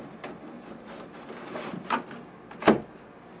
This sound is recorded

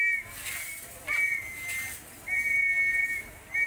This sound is recorded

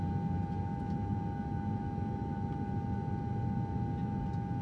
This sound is recorded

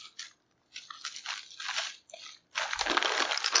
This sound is recorded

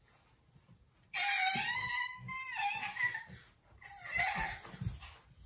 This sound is recorded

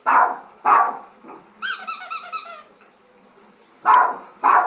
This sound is recorded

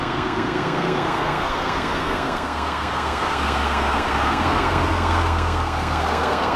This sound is remade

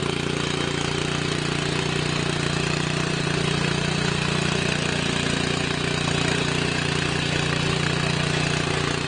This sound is recorded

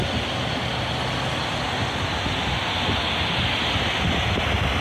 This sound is recorded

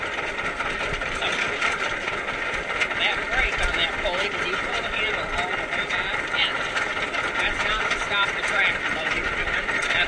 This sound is recorded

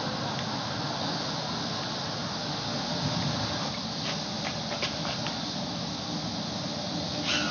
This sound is recorded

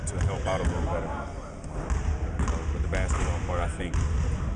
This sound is recorded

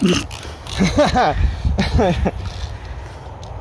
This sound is recorded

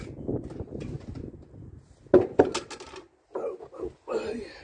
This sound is recorded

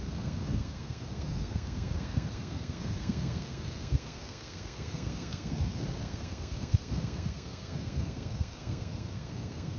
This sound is remade